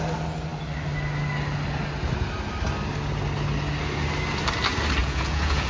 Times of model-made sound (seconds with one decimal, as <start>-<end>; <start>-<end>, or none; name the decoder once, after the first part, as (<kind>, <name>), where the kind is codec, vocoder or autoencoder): 5.0-5.7 (vocoder, Vocos)